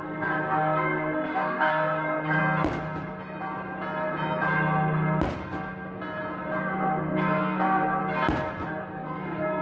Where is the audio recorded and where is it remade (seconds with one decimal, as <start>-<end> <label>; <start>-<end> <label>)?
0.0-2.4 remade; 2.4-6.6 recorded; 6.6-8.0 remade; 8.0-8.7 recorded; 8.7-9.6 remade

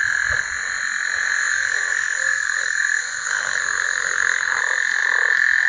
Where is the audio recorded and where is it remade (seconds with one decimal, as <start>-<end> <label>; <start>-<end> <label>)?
0.0-1.5 recorded; 1.5-4.6 remade; 4.6-5.7 recorded

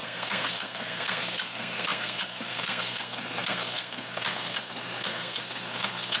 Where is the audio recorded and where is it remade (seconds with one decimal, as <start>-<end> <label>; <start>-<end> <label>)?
0.0-6.2 remade